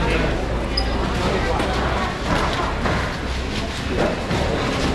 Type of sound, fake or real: real